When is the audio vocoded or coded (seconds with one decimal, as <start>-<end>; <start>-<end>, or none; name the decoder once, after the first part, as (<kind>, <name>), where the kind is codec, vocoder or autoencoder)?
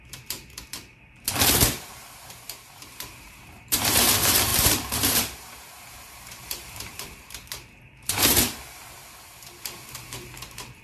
0.0-10.8 (vocoder, BigVGAN v2)